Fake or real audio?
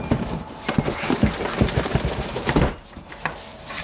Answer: fake